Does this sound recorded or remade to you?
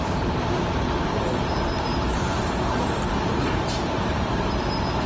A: remade